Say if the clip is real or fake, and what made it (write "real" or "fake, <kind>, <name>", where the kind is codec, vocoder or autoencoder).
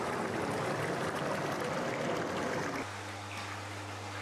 real